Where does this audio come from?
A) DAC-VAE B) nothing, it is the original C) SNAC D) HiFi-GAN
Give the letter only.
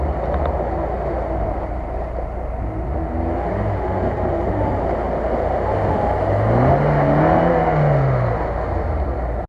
B